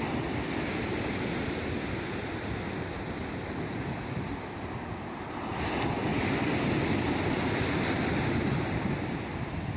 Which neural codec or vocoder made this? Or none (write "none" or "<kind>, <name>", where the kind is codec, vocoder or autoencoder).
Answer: none